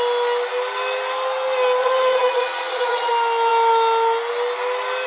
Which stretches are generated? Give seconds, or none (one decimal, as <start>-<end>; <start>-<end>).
1.8-3.1

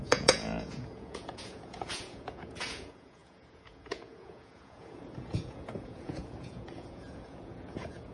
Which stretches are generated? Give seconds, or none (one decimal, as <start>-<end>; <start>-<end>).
0.0-8.1